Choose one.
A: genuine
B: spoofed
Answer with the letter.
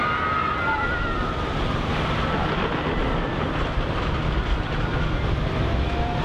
A